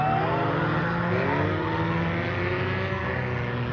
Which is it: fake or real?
real